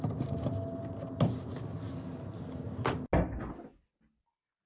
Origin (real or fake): real